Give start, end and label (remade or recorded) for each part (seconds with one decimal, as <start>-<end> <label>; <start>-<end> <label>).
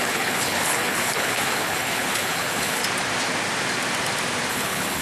0.0-2.8 remade; 2.8-4.5 recorded; 4.5-5.0 remade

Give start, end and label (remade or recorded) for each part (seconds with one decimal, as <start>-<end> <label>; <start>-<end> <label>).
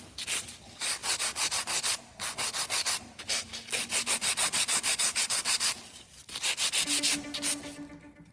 0.0-8.3 recorded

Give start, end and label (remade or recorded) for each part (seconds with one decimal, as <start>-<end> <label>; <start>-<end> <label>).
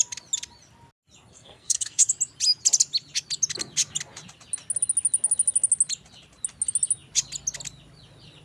0.0-1.3 recorded; 1.3-2.1 remade; 2.1-8.4 recorded